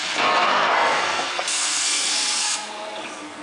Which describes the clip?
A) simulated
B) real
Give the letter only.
A